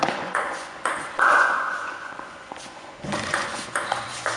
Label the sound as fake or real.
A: fake